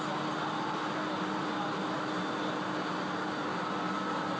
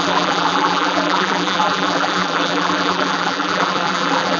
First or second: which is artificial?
second